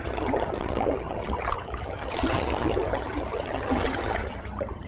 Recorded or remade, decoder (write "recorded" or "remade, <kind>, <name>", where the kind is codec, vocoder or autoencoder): remade, vocoder, HiFi-GAN